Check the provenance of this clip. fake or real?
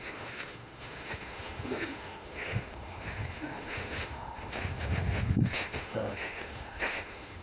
fake